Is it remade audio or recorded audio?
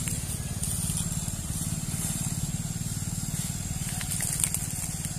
recorded